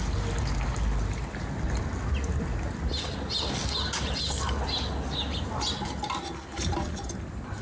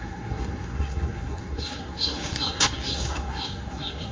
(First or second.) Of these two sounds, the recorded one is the first